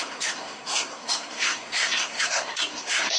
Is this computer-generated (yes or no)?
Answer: yes